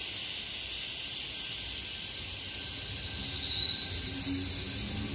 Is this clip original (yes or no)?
yes